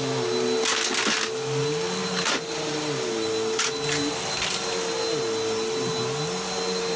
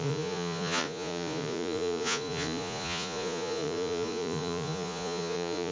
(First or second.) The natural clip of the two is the first